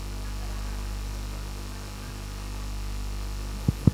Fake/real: real